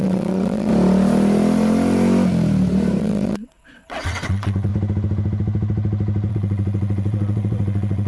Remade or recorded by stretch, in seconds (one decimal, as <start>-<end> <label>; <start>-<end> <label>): 0.0-0.7 remade; 0.7-3.0 recorded; 3.0-4.7 remade; 4.7-6.3 recorded; 6.3-8.1 remade